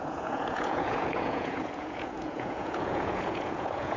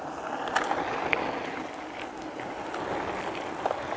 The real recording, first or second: second